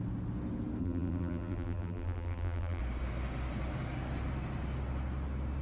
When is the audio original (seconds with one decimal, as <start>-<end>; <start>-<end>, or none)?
0.0-0.8; 2.8-5.6